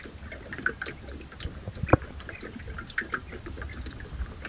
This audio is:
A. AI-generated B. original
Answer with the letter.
B